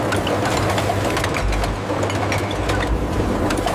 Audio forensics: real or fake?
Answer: real